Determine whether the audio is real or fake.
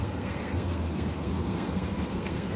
fake